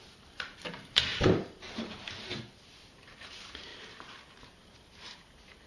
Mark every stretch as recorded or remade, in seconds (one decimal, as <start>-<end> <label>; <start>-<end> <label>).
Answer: 0.0-3.7 remade; 3.7-4.4 recorded; 4.4-5.7 remade